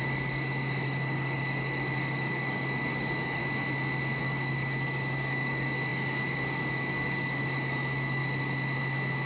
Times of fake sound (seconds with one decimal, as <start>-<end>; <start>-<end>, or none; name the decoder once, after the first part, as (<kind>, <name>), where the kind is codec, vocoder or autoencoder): 0.0-3.4 (codec, DAC); 4.2-8.2